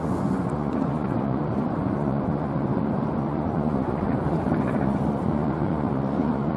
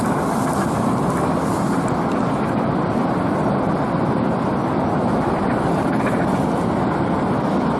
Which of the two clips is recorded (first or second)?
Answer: second